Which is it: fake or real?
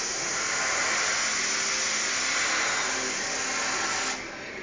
real